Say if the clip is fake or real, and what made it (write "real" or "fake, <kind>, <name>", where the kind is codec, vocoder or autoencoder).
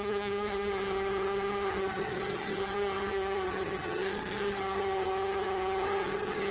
fake, vocoder, HiFi-GAN